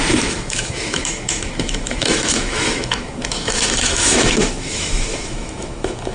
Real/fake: fake